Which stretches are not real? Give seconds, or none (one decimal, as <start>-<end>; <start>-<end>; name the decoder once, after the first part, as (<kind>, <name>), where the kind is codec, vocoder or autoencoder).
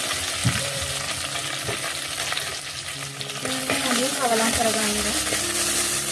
0.4-0.9 (vocoder, BigVGAN v2)